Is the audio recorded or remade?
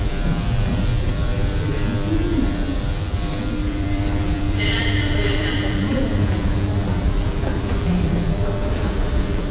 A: remade